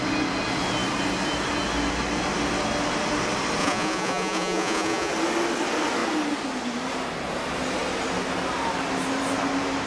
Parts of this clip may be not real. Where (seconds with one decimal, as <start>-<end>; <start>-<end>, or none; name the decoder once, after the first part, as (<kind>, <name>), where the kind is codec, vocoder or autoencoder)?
3.6-5.1 (vocoder, Vocos)